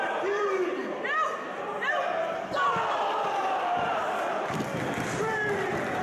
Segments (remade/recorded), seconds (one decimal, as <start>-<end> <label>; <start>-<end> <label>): 0.0-0.7 remade; 0.7-2.2 recorded; 2.2-6.0 remade